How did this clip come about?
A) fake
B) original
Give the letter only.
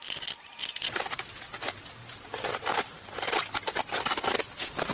B